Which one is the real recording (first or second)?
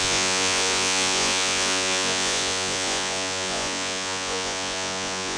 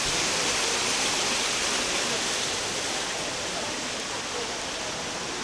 second